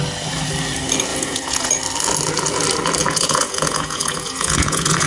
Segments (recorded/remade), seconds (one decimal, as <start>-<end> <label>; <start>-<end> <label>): 0.0-1.1 recorded; 1.1-1.7 remade; 1.7-3.0 recorded; 3.0-5.1 remade